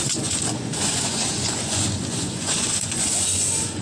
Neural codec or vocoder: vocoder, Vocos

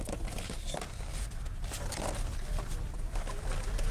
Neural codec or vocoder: none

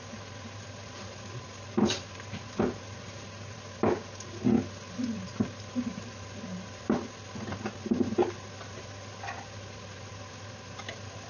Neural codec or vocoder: none